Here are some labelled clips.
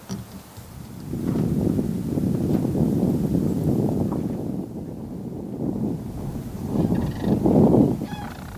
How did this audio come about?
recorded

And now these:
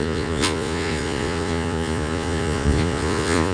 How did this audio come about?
remade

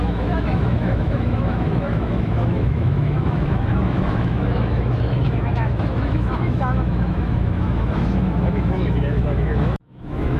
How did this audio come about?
remade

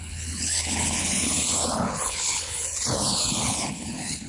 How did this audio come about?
remade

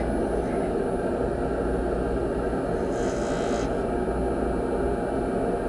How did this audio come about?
recorded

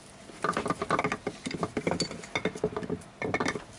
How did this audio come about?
recorded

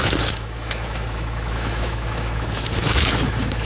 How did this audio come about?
remade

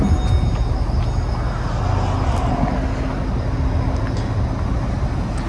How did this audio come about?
recorded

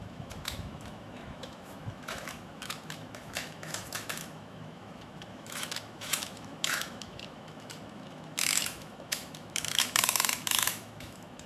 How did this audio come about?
remade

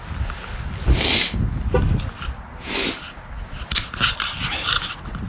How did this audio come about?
recorded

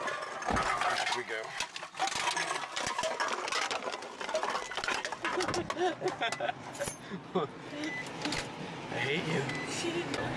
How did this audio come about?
recorded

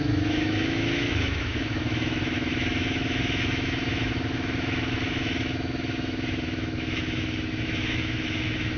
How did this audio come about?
remade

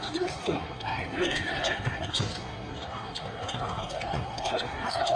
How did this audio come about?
remade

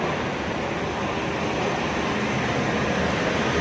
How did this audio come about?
recorded